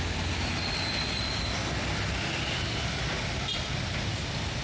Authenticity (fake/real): real